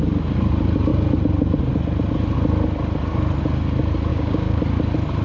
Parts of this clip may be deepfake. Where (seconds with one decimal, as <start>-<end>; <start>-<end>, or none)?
4.1-4.6